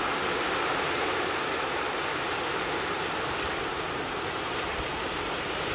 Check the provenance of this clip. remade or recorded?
recorded